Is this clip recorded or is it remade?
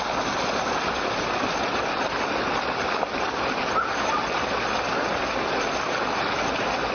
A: recorded